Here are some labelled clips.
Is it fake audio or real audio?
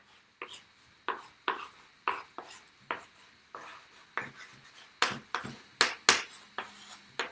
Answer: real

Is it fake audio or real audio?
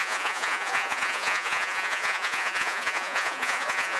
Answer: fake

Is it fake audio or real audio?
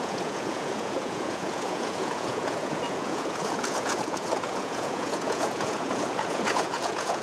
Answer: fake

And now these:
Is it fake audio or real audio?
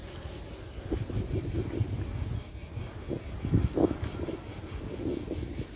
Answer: real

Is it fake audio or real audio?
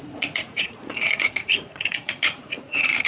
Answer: fake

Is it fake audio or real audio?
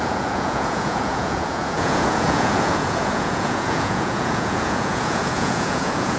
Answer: fake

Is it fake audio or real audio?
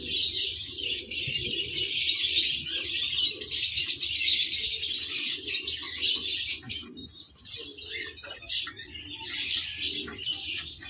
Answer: real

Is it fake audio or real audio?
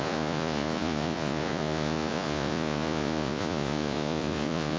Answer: fake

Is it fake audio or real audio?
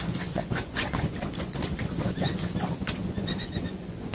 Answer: fake